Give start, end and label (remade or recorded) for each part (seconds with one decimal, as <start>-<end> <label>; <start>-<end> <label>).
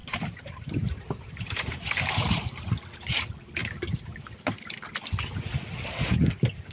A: 0.0-2.7 remade; 2.7-3.6 recorded; 3.6-4.9 remade; 4.9-6.7 recorded